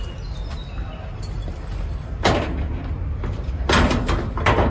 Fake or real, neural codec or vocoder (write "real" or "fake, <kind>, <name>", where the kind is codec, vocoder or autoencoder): real